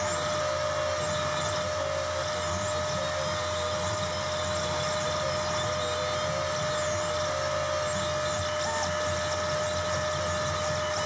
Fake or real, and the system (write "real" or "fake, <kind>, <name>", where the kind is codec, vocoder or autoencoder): real